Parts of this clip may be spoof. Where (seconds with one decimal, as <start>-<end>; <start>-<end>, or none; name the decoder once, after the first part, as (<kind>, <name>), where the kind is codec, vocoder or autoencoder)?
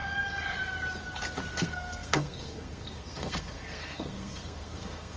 1.5-5.2 (codec, SNAC)